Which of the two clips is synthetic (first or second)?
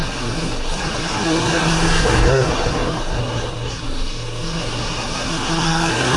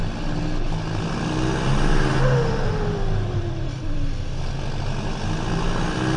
first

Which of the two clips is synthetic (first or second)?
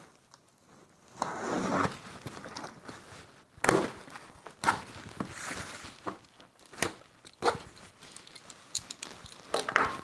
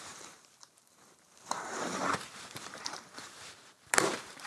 second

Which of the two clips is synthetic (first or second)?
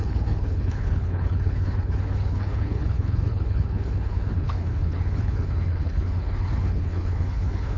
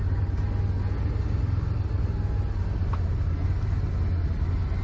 first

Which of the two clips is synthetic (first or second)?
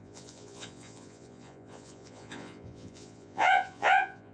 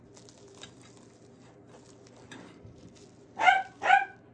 first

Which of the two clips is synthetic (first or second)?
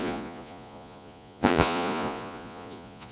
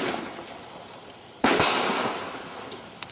first